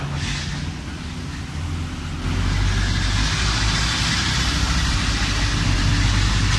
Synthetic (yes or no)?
no